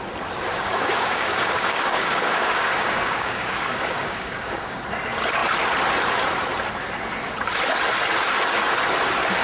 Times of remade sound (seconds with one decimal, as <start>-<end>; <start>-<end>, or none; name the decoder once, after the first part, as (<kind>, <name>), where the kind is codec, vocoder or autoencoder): 0.5-4.8 (codec, DAC)